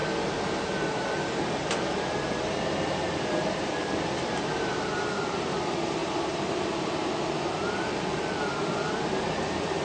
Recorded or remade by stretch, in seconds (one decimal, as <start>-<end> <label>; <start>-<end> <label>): 0.0-9.8 recorded